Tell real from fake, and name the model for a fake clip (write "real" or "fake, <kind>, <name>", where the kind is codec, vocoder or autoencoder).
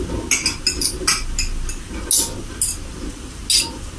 real